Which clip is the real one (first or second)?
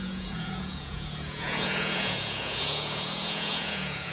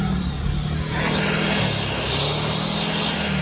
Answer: second